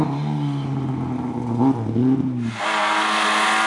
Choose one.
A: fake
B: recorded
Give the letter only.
B